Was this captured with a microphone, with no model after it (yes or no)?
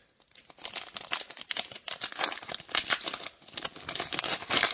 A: yes